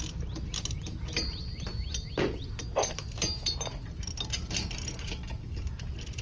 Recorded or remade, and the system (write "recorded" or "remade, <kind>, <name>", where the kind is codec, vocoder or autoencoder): recorded